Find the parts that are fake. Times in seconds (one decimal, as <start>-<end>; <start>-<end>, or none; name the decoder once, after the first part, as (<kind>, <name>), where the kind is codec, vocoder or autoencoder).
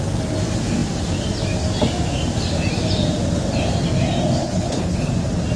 4.4-5.1 (codec, HILCodec)